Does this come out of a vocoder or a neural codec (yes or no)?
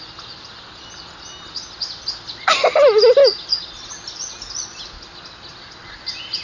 no